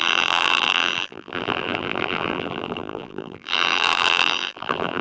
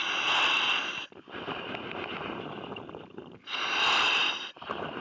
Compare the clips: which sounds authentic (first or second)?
second